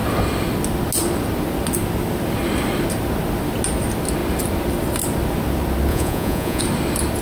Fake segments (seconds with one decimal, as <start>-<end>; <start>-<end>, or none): 5.9-6.6

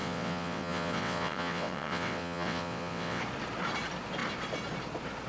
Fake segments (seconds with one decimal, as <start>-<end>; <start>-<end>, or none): 0.0-3.2

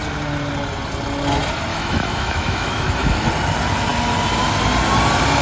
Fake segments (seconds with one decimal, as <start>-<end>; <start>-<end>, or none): 1.7-3.3

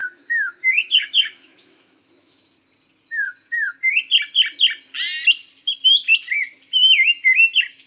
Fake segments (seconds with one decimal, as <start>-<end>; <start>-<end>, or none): 0.0-2.5

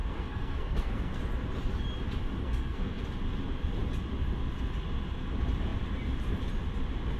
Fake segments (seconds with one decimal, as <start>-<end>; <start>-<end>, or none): 0.0-1.2; 2.4-3.0

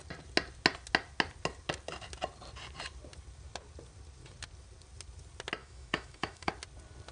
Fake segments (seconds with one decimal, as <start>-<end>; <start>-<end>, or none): 5.6-6.5

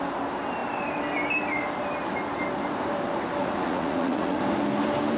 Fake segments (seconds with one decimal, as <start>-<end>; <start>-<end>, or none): 3.4-4.4